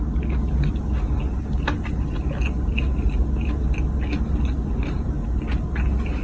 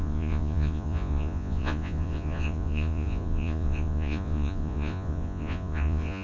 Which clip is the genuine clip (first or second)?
first